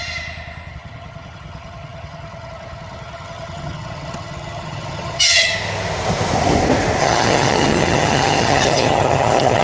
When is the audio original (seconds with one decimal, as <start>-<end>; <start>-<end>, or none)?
0.0-0.7; 5.5-7.0